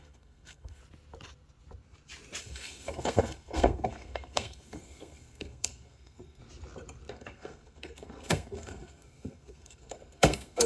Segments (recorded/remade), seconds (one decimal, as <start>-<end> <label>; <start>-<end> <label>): 0.0-0.8 remade; 0.8-2.4 recorded; 2.4-6.4 remade; 6.4-7.1 recorded; 7.1-10.7 remade